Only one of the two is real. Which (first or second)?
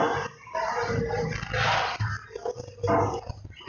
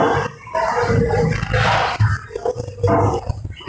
first